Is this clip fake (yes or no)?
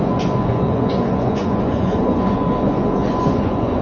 yes